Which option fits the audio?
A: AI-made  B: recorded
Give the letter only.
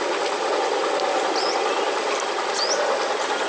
B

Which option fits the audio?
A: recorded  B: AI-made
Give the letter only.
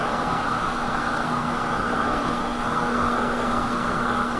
B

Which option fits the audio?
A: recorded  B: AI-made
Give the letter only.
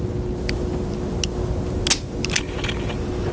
A